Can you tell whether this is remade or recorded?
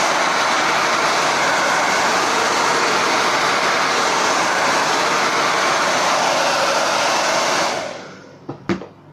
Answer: recorded